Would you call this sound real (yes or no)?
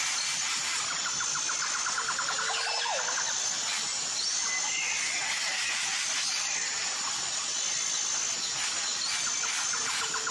yes